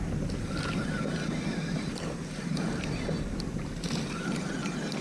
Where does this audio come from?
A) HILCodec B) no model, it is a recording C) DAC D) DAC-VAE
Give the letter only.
B